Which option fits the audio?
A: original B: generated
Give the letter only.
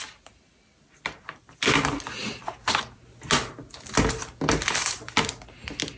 A